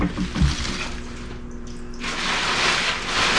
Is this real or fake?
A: real